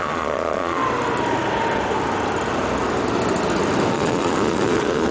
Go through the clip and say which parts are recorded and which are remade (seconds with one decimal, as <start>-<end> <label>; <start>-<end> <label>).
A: 0.0-0.8 remade; 0.8-3.9 recorded; 3.9-5.1 remade